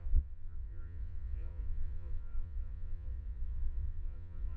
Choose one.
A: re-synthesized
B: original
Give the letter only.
A